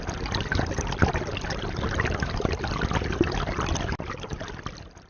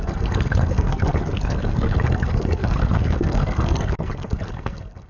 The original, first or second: first